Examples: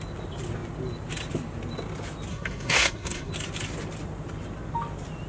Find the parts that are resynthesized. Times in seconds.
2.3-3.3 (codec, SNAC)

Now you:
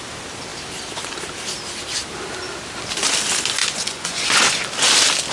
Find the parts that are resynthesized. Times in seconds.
3.6-4.6 (vocoder, Vocos)

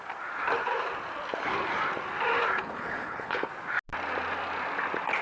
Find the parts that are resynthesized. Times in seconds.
2.6-3.5 (codec, HILCodec)

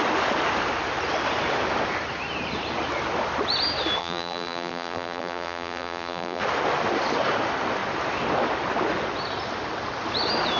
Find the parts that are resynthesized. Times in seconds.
4.0-6.4 (vocoder, BigVGAN v2)

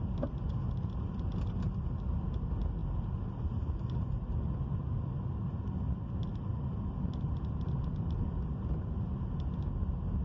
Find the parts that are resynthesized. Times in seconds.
none

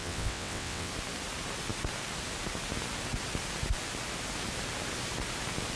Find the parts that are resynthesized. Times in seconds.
0.0-0.9 (vocoder, WaveNeXt)